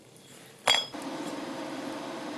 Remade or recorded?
remade